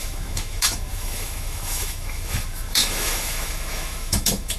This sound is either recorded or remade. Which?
remade